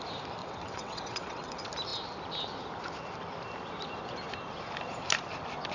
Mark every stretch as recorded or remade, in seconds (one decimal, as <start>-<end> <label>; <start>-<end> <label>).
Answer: 0.0-0.4 recorded; 0.4-1.5 remade; 1.5-5.7 recorded